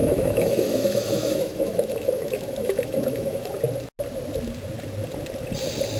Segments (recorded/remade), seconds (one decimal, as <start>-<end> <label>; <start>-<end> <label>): 0.0-3.6 remade; 3.6-6.0 recorded